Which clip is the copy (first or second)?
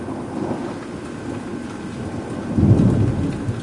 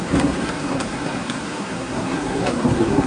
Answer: second